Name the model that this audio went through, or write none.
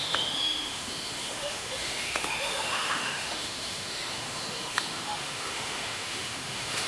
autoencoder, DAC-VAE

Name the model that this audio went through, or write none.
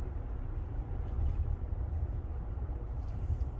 vocoder, BigVGAN v2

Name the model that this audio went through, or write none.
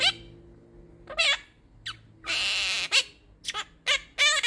none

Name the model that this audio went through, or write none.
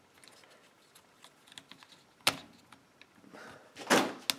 none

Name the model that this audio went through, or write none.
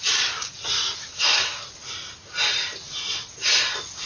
none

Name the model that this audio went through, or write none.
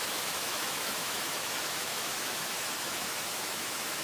autoencoder, DAC-VAE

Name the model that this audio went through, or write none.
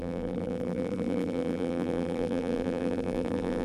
vocoder, BigVGAN v2